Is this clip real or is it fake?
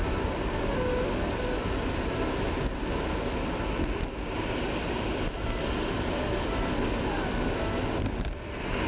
real